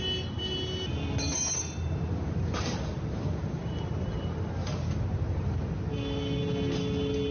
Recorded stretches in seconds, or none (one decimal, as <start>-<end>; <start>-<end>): 0.0-1.3; 5.7-7.3